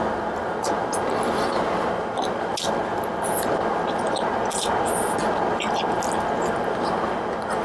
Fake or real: real